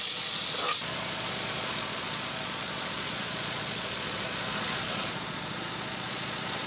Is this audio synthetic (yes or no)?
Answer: yes